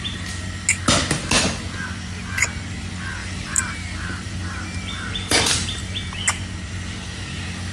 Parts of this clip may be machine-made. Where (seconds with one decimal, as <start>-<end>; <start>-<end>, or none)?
3.2-6.2